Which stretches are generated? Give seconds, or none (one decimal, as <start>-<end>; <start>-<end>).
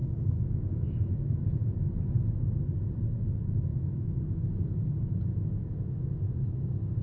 0.0-1.9; 3.7-4.6; 5.6-6.5